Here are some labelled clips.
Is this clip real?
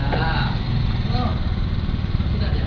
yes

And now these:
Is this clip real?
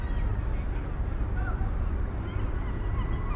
yes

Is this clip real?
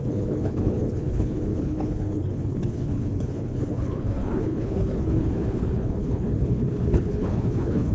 no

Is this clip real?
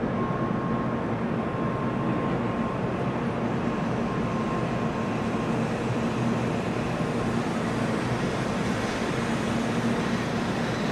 yes